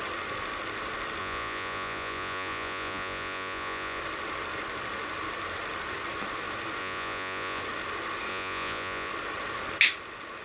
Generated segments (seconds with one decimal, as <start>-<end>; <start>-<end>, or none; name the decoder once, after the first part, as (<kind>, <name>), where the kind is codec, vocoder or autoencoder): 1.2-4.0 (vocoder, Vocos); 6.8-7.6; 8.3-9.1